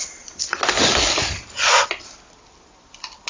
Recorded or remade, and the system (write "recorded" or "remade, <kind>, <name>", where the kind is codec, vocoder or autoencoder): recorded